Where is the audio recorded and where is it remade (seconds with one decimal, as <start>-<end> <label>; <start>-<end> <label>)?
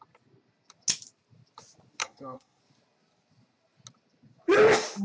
0.0-2.0 recorded; 2.0-2.6 remade; 2.6-5.0 recorded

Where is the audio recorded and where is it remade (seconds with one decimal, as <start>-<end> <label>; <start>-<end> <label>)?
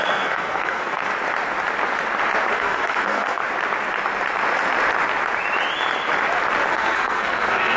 0.0-1.1 remade; 1.1-2.5 recorded; 2.5-3.4 remade; 3.4-6.7 recorded; 6.7-7.8 remade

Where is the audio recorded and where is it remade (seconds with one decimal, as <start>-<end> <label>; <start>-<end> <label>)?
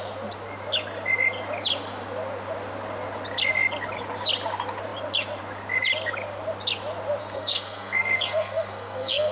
0.0-7.2 recorded; 7.2-9.3 remade